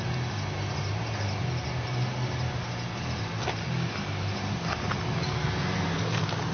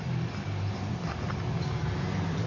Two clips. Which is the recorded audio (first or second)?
first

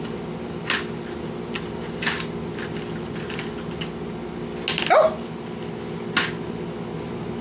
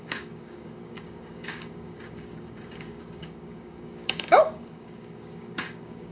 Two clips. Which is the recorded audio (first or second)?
first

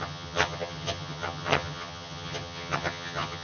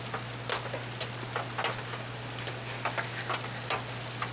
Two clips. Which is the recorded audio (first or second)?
second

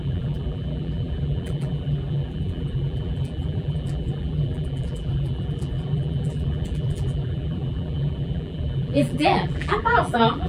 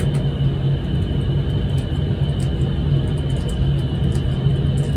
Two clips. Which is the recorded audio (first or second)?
second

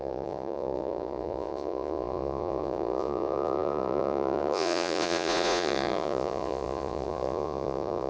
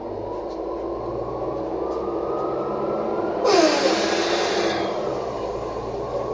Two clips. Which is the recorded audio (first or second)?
second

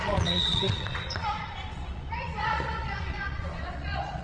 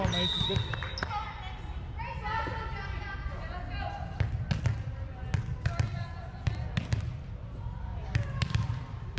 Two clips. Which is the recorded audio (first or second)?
second